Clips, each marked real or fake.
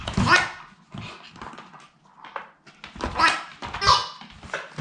real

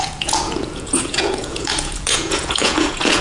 fake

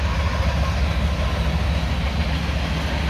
real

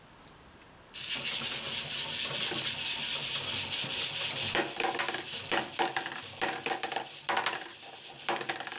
real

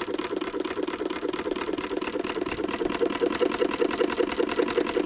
real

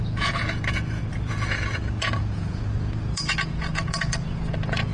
fake